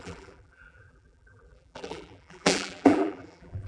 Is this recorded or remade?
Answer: remade